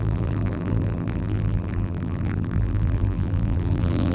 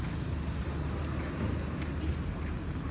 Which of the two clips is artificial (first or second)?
first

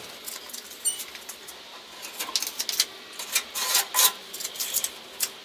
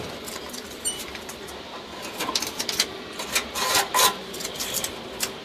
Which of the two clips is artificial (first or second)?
second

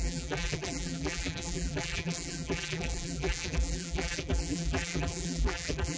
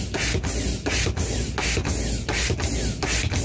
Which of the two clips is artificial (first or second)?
first